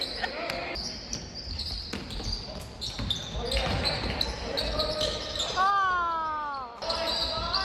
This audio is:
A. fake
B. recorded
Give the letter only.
B